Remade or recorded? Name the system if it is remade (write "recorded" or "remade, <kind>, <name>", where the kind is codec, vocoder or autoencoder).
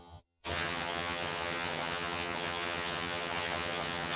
remade, vocoder, HiFi-GAN